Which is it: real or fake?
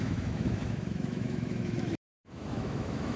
fake